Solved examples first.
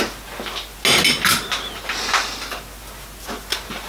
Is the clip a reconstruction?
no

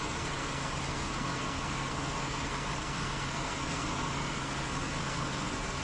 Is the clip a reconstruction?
yes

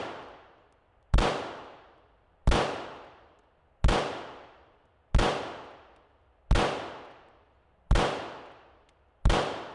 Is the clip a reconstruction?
no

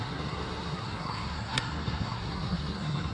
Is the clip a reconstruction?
yes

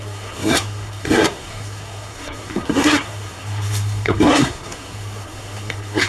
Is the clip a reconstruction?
yes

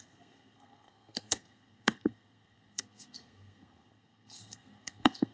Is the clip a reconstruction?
yes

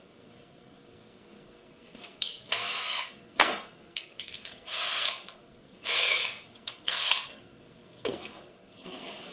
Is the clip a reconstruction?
yes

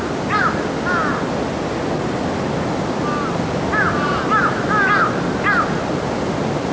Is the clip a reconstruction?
no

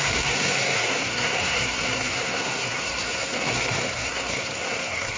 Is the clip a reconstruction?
yes